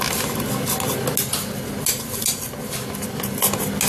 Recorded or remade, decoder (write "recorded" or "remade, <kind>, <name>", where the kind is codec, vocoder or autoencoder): recorded